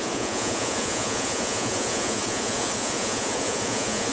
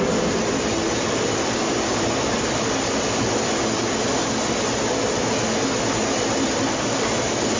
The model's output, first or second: first